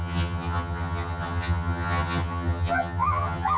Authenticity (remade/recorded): remade